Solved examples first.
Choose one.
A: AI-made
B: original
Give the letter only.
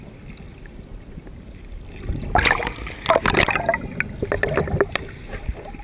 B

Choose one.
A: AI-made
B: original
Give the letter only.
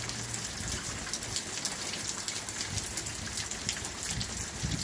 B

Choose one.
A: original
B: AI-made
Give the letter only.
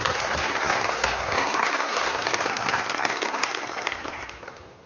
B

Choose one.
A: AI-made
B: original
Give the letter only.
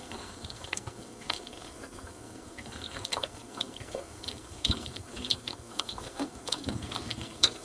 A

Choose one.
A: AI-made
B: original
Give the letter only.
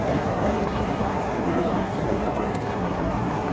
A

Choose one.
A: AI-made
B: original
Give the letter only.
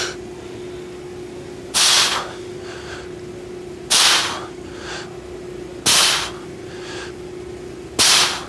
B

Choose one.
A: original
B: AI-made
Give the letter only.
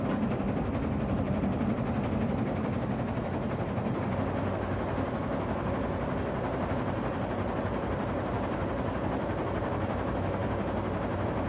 A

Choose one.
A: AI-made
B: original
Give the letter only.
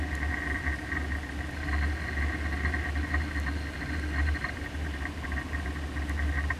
B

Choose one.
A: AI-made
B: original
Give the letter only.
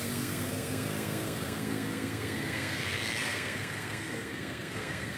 A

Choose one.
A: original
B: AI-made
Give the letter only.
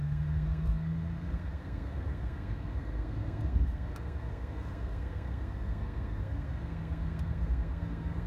B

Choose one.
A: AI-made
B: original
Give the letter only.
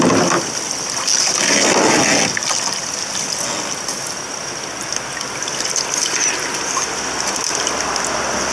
B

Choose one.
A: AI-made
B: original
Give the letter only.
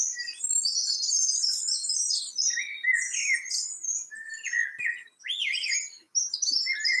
B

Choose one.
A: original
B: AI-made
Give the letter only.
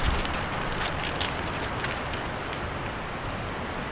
A